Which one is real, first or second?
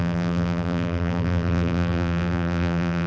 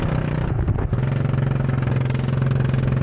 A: second